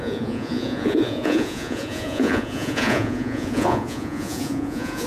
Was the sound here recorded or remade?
remade